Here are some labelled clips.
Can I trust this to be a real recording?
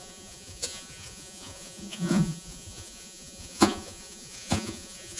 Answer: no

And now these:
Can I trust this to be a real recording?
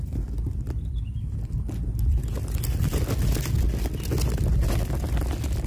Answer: yes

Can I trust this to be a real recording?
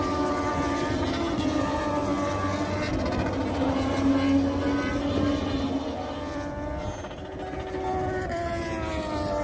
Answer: yes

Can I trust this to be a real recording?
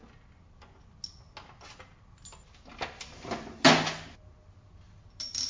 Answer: yes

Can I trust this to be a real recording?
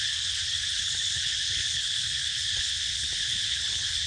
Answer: no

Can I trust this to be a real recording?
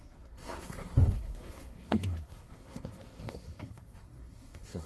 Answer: no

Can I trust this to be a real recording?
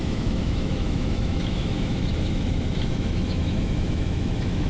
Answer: no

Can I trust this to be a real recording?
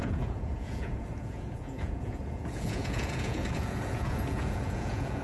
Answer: no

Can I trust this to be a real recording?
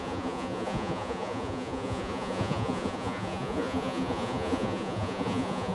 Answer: no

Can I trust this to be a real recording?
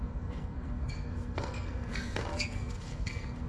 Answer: no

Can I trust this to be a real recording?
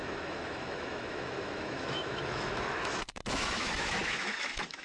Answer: no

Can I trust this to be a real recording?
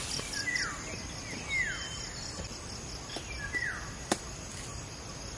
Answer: yes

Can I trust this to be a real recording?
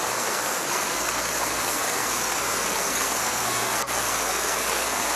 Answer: no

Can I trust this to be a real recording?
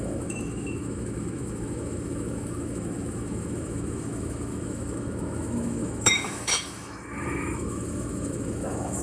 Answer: no